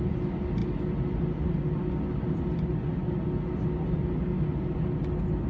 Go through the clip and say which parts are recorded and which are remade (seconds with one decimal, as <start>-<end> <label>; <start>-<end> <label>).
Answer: 0.0-5.5 recorded

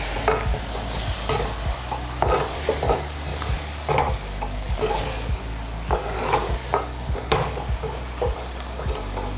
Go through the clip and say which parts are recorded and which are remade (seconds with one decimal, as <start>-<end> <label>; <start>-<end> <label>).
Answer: 0.0-0.5 recorded; 0.5-1.1 remade; 1.1-3.3 recorded; 3.3-7.8 remade; 7.8-9.4 recorded

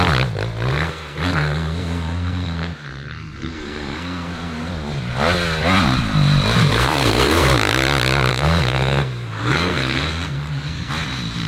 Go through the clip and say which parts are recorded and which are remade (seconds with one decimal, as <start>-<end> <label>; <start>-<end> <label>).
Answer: 0.0-0.7 recorded; 0.7-4.7 remade; 4.7-6.6 recorded; 6.6-7.5 remade; 7.5-8.3 recorded; 8.3-10.9 remade; 10.9-11.5 recorded

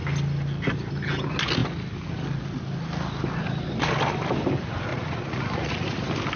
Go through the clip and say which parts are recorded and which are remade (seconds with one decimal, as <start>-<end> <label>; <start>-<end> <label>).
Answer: 0.0-4.9 recorded; 4.9-6.0 remade; 6.0-6.4 recorded

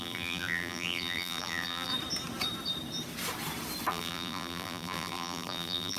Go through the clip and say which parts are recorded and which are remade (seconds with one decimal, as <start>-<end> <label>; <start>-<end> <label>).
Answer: 0.0-1.9 remade; 1.9-3.9 recorded; 3.9-6.0 remade

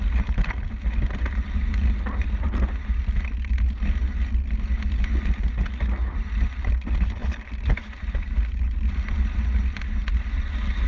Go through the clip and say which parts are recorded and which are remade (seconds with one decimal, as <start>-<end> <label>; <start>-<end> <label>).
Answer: 0.0-10.9 recorded